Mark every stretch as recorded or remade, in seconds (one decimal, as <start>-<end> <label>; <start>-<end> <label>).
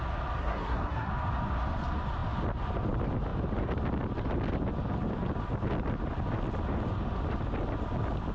0.0-0.4 recorded; 0.4-1.1 remade; 1.1-8.3 recorded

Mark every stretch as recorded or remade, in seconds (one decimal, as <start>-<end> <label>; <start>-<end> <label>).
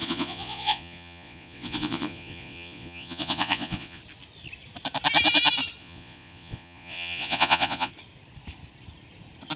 0.0-4.0 remade; 4.0-5.8 recorded; 5.8-7.9 remade; 7.9-9.6 recorded